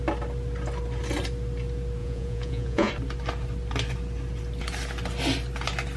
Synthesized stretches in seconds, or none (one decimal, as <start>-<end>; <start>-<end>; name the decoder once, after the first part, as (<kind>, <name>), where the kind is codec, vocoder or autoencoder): 2.0-2.9 (vocoder, Vocos)